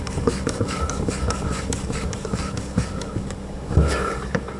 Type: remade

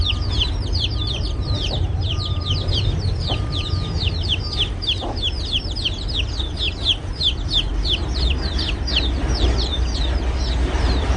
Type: remade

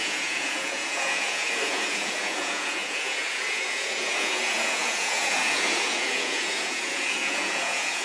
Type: remade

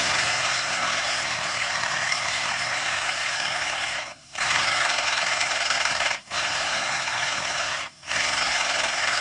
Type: remade